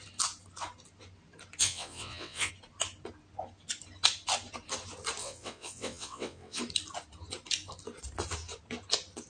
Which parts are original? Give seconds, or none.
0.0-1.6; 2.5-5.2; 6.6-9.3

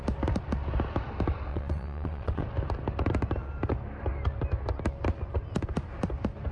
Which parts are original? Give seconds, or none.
0.0-1.5; 2.4-6.5